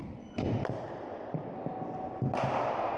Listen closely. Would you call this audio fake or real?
real